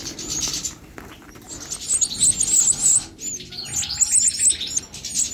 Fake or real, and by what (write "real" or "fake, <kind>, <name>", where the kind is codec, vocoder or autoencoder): real